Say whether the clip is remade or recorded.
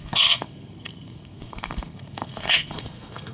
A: remade